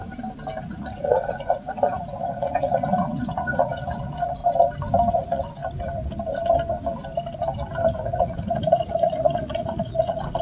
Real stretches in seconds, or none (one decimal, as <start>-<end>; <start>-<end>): 0.0-0.6; 4.4-5.1; 5.6-7.9